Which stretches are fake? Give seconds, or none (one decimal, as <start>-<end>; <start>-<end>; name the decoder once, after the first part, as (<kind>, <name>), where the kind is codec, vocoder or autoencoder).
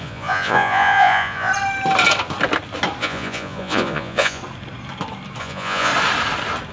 0.0-1.5 (vocoder, Vocos); 3.0-4.4; 5.4-5.9